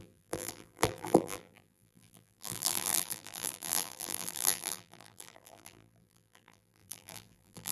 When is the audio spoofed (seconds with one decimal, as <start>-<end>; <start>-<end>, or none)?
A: 0.0-7.7